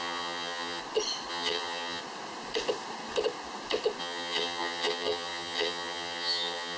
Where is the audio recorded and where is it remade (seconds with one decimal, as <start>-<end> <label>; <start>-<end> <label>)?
0.0-0.8 remade; 0.8-1.3 recorded; 1.3-2.0 remade; 2.0-4.0 recorded; 4.0-6.8 remade